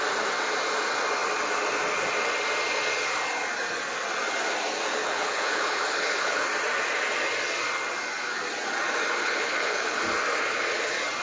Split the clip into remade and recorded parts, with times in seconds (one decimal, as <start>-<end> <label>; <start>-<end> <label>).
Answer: 0.0-5.0 recorded; 5.0-6.5 remade; 6.5-9.2 recorded; 9.2-10.0 remade; 10.0-11.2 recorded